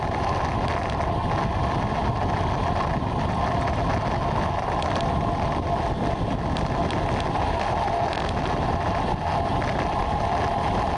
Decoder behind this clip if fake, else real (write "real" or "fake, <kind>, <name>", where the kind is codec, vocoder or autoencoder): real